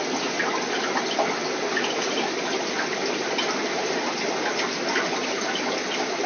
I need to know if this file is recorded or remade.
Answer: recorded